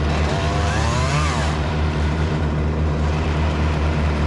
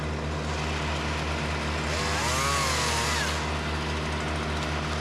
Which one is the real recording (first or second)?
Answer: second